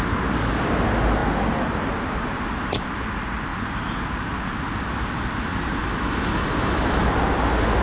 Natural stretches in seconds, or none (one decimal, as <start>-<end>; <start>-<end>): 0.0-5.8; 7.0-7.8

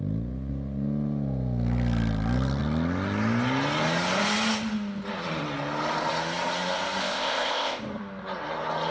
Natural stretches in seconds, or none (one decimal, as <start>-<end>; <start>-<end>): 0.0-7.0; 7.8-8.9

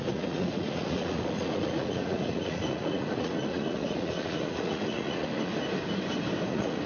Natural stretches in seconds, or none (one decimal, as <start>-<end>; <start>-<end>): 5.5-6.5

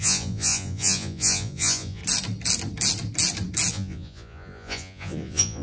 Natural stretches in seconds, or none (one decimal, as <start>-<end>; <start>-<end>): 2.0-3.7

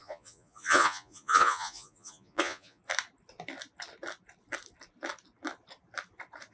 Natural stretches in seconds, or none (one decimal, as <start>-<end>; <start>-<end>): 2.8-6.5

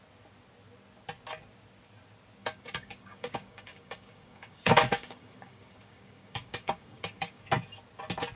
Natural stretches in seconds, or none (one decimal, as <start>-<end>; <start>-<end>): 0.0-2.4; 7.4-8.4